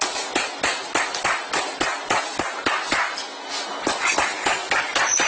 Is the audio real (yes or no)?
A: yes